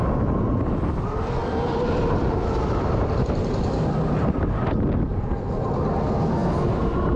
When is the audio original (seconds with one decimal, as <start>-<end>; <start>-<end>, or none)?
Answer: 0.0-7.2